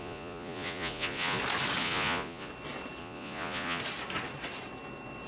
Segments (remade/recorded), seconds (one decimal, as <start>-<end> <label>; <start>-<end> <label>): 0.0-1.4 remade; 1.4-1.8 recorded; 1.8-2.5 remade; 2.5-3.0 recorded; 3.0-3.8 remade; 3.8-5.3 recorded